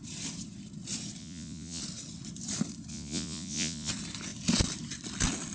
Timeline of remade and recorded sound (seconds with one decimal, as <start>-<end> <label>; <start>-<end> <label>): 0.0-1.2 recorded; 1.2-1.8 remade; 1.8-2.9 recorded; 2.9-3.9 remade; 3.9-5.5 recorded